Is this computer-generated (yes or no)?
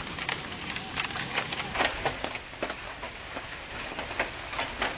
no